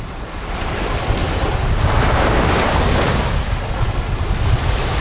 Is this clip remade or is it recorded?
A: recorded